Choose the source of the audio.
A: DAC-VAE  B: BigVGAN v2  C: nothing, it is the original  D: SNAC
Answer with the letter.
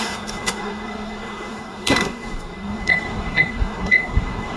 D